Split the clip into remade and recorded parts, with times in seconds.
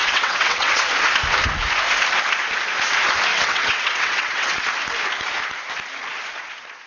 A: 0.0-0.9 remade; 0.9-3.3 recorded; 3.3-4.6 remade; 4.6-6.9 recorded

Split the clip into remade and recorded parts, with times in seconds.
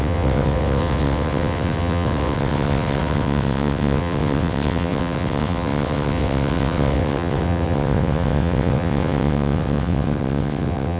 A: 0.0-11.0 remade